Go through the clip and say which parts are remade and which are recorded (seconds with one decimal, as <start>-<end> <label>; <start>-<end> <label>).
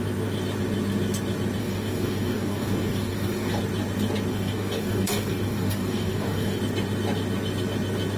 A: 0.0-1.6 recorded; 1.6-3.6 remade; 3.6-4.3 recorded; 4.3-6.6 remade; 6.6-8.2 recorded